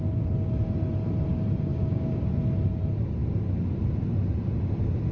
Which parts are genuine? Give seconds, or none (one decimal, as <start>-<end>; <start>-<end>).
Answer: 0.0-1.7; 2.3-5.1